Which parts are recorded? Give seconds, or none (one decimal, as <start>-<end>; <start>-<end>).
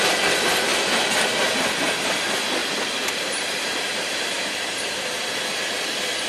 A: 0.0-2.6; 5.1-6.3